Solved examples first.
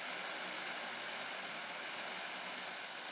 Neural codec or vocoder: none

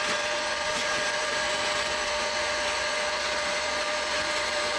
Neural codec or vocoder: vocoder, Vocos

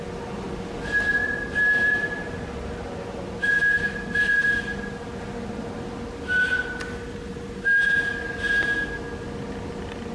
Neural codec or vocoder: none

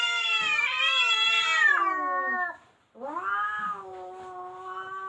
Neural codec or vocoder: none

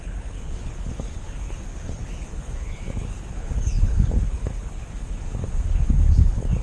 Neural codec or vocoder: codec, HILCodec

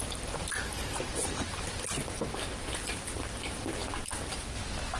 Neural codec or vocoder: none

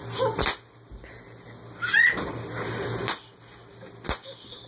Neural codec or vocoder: none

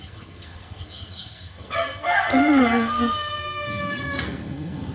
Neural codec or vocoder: codec, SNAC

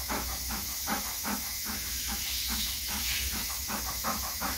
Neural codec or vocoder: autoencoder, DAC-VAE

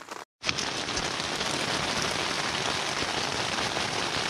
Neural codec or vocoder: none